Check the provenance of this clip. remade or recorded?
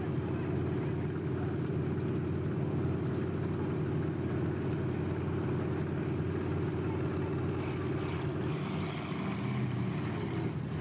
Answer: recorded